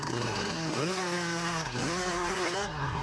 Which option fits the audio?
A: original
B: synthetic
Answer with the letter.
B